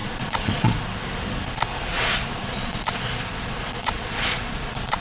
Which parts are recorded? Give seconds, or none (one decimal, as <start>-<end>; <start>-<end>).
0.7-1.9